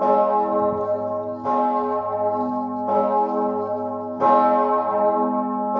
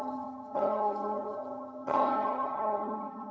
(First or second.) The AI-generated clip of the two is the second